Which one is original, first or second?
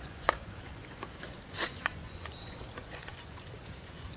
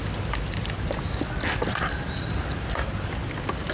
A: second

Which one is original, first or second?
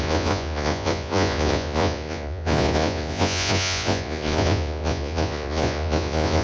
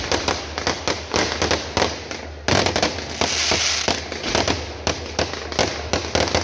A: second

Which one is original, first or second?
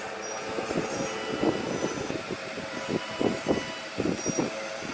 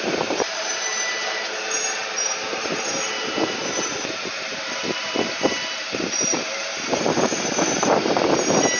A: first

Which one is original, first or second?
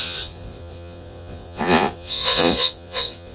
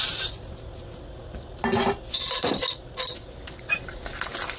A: second